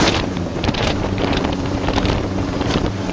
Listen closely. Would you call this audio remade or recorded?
remade